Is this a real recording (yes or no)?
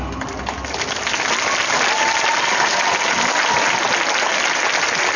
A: yes